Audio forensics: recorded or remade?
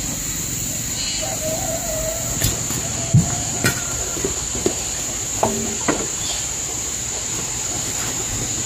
remade